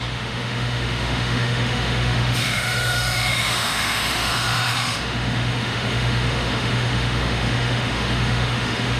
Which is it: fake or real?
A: fake